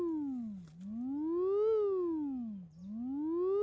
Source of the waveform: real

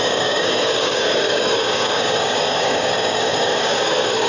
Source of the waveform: fake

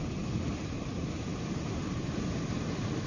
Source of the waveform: real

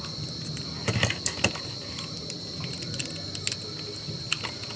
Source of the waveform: real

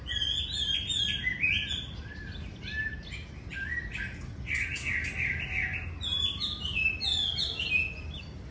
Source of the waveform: real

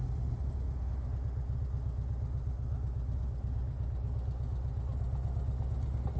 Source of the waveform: real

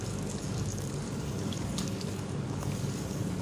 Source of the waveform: fake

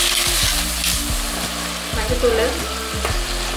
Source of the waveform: real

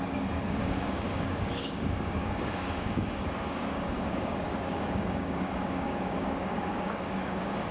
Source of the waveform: fake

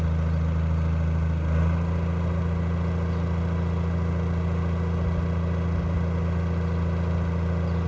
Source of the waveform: real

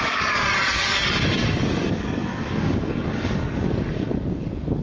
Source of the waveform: fake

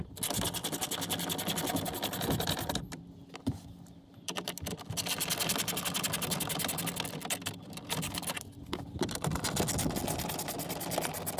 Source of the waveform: real